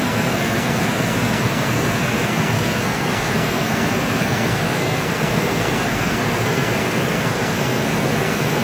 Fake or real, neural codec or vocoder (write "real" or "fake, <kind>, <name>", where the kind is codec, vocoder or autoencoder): fake, codec, SNAC